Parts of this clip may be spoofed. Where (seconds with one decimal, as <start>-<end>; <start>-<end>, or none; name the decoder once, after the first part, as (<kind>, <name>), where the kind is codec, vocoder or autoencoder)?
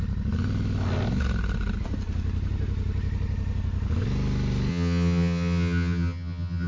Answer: 4.7-6.7 (vocoder, HiFi-GAN)